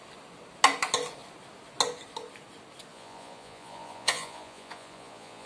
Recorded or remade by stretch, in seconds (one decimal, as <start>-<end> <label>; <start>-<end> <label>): 0.0-2.9 recorded; 2.9-5.5 remade